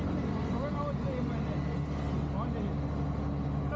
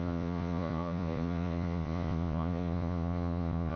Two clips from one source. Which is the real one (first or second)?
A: first